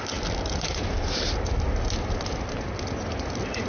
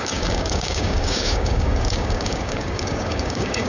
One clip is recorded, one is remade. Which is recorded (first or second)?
first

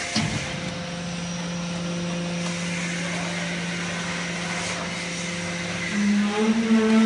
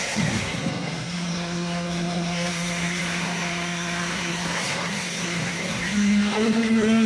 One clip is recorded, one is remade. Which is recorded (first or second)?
first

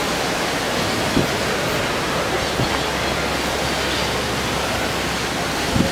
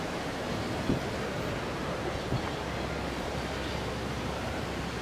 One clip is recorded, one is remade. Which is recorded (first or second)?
first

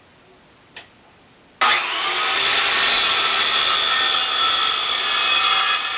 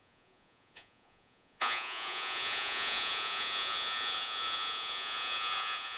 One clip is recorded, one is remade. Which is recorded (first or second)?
first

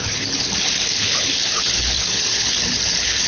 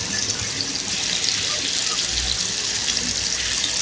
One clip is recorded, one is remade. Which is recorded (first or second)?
second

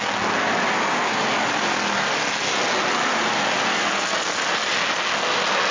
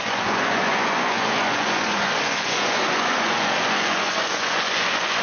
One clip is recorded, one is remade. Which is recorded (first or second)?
first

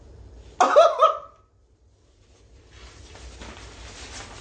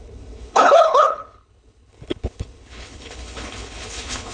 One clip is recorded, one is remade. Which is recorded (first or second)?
first